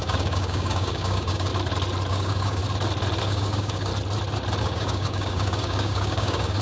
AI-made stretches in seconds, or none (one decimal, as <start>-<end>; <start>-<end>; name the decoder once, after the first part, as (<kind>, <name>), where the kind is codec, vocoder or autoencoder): 0.0-1.5 (codec, DAC); 2.1-2.6; 3.2-3.9; 4.6-6.6